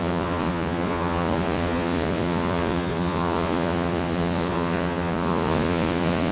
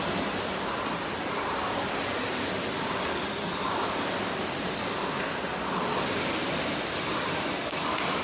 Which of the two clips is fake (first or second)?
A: first